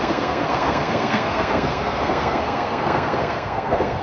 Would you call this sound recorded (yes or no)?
no